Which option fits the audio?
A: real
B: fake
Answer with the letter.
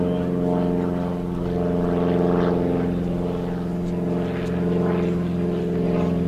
A